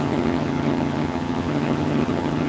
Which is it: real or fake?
fake